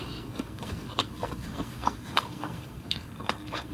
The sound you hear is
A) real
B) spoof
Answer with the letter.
B